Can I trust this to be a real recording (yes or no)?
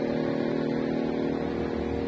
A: yes